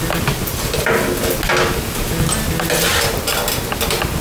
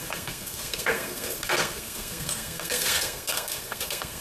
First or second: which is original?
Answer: first